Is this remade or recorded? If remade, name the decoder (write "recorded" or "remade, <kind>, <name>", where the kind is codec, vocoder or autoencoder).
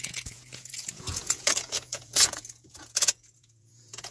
remade, vocoder, Vocos